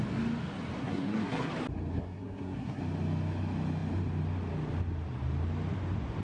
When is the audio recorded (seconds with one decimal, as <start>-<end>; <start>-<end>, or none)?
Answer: 0.0-0.8; 1.5-1.9; 2.8-6.2